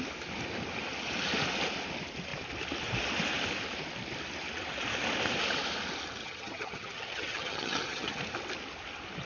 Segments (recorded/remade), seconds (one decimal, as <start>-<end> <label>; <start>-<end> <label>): 0.0-6.2 recorded; 6.2-8.2 remade; 8.2-9.3 recorded